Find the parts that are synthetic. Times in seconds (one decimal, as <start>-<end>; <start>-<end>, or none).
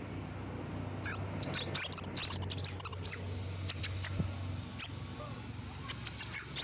none